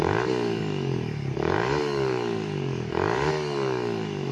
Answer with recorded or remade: remade